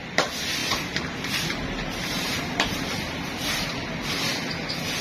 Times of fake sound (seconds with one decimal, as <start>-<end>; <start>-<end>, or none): 0.6-3.6